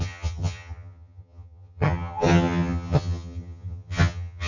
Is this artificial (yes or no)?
yes